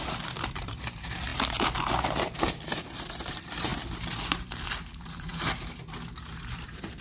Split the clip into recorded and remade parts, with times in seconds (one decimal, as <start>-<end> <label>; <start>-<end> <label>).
0.0-3.7 remade; 3.7-4.3 recorded; 4.3-5.3 remade; 5.3-6.3 recorded; 6.3-7.0 remade